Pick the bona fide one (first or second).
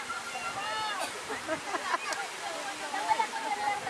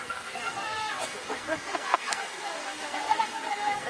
first